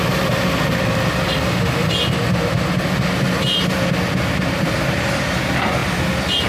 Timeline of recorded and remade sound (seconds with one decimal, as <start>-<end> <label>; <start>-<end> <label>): 0.0-6.5 recorded